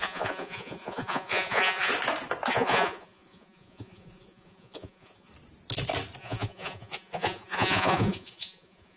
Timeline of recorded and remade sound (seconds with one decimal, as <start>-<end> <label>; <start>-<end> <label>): 0.0-1.9 remade; 1.9-2.5 recorded; 2.5-5.3 remade; 5.3-6.2 recorded; 6.2-9.0 remade